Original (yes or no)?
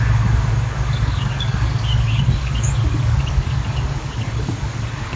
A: no